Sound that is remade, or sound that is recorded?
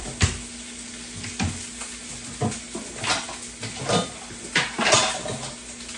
recorded